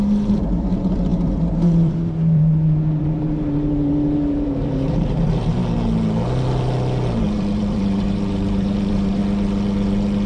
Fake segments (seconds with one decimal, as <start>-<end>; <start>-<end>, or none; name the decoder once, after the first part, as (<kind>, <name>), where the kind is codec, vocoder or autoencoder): 0.0-5.6 (vocoder, BigVGAN v2); 7.2-9.2